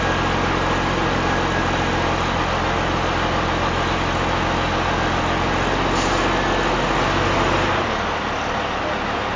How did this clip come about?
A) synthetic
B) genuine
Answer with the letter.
B